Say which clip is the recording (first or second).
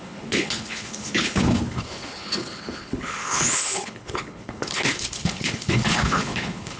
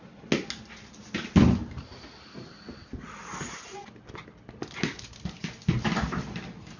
second